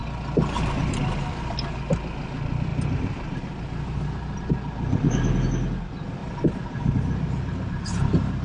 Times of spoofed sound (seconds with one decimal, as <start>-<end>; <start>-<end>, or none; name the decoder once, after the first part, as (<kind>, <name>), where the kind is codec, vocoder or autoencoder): 2.7-3.4 (vocoder, BigVGAN v2); 6.2-6.9